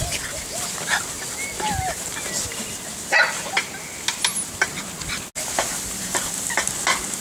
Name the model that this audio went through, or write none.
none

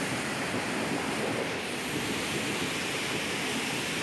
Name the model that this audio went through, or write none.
none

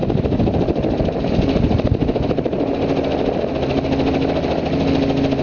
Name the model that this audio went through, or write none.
none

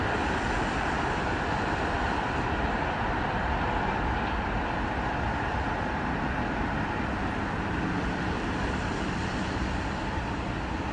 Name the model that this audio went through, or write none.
none